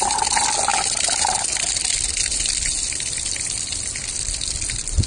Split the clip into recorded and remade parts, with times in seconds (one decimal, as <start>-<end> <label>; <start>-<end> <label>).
0.0-5.1 recorded